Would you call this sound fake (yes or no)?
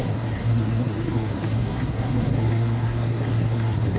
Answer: yes